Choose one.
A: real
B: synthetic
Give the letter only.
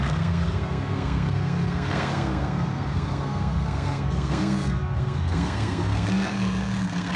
B